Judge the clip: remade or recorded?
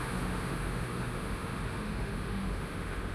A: remade